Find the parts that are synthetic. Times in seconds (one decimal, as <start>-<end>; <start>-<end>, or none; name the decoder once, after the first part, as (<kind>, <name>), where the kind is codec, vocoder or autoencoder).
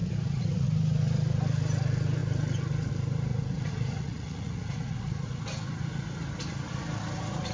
0.0-0.7 (vocoder, Vocos); 3.3-5.4